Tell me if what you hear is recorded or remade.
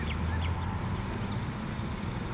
recorded